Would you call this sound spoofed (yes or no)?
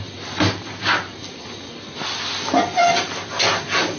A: no